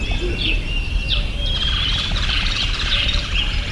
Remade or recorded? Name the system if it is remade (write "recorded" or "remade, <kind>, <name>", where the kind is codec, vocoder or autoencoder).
remade, vocoder, BigVGAN v2